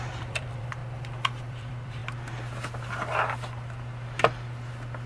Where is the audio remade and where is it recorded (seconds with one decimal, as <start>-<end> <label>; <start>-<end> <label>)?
0.0-0.8 remade; 0.8-1.5 recorded; 1.5-2.0 remade; 2.0-5.1 recorded